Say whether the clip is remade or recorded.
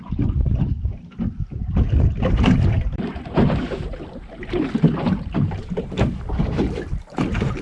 remade